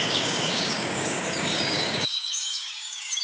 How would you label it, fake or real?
fake